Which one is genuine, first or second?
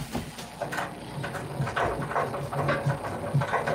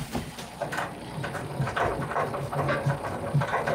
first